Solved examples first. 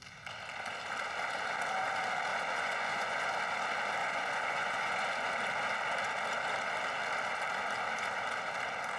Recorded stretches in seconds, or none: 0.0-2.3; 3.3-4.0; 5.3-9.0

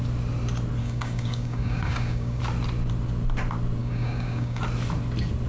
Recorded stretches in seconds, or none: 0.0-0.8; 2.4-3.8; 4.6-5.5

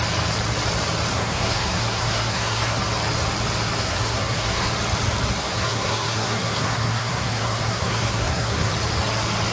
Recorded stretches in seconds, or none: 0.0-1.1; 2.8-3.8; 4.7-5.4; 8.7-9.5

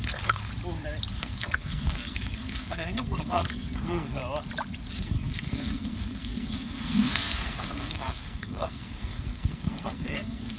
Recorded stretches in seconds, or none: 0.5-1.1; 4.2-4.9

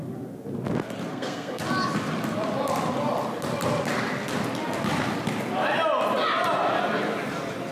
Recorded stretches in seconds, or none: 0.0-1.1; 1.6-7.7

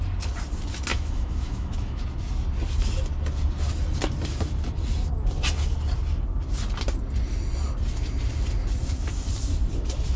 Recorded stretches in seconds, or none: 0.0-0.9; 2.0-10.2

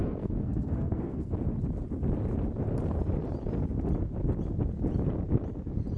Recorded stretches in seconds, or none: 1.3-6.0